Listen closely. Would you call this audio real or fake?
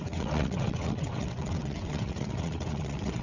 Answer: fake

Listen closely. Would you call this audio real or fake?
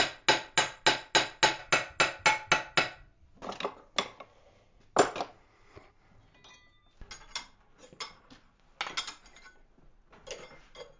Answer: real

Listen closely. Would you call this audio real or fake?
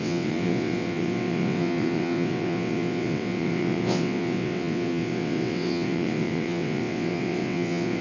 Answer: fake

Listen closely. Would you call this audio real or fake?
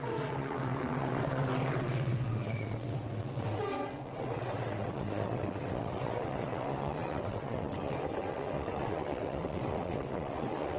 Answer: fake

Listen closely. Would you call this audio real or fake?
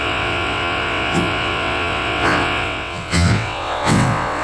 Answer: fake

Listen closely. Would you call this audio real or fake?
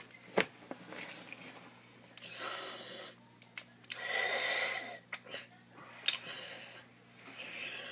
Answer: real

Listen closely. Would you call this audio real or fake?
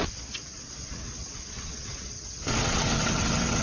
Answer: fake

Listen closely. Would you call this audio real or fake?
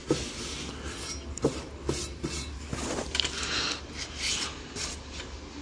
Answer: real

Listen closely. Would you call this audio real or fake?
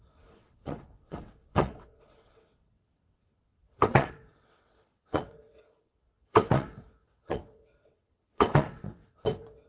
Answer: fake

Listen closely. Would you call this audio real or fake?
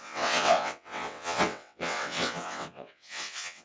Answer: fake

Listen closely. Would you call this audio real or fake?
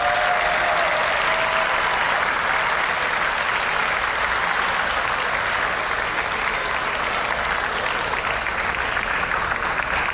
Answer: real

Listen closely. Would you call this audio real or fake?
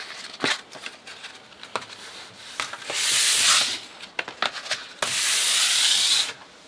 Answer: real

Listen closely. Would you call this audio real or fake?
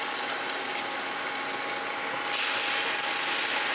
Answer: real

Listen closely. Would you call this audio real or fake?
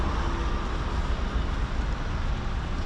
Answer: real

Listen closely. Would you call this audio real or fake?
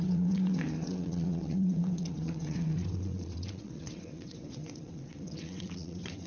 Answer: fake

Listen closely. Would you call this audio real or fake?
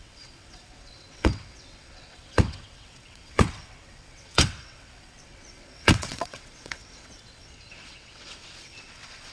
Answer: fake